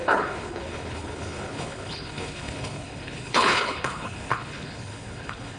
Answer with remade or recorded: remade